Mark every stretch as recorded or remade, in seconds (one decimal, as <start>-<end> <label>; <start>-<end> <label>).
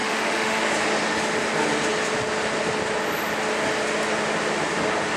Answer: 0.0-0.6 remade; 0.6-5.2 recorded